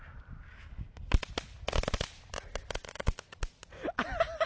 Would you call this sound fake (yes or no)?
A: no